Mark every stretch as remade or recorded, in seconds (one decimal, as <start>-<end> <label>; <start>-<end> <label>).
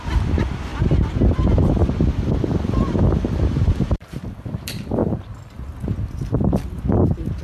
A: 0.0-0.7 remade; 0.7-1.4 recorded; 1.4-1.8 remade; 1.8-3.0 recorded; 3.0-5.0 remade; 5.0-7.4 recorded